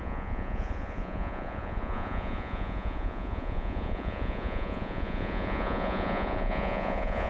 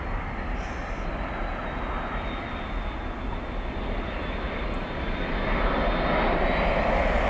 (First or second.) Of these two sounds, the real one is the second